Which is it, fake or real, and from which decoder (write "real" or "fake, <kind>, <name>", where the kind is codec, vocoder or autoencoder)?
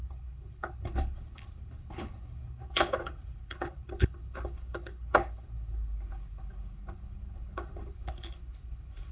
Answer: fake, codec, HILCodec